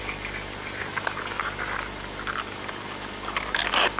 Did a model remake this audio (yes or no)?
no